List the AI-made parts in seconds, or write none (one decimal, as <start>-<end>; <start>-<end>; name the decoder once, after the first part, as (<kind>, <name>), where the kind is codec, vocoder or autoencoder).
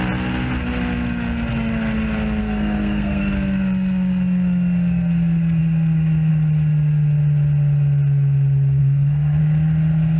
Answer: 2.4-3.2 (codec, SNAC); 8.8-9.4